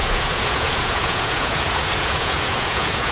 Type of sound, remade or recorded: remade